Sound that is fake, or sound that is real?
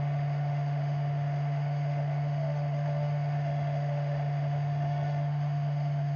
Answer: fake